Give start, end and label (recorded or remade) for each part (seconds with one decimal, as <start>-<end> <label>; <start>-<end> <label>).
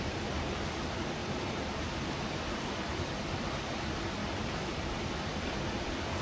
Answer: 0.0-1.2 recorded; 1.2-2.0 remade; 2.0-4.2 recorded; 4.2-5.1 remade; 5.1-6.2 recorded